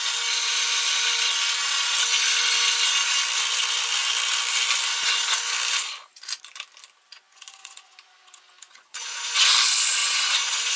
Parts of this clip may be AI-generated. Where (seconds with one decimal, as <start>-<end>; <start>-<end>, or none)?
7.1-9.5; 10.0-10.8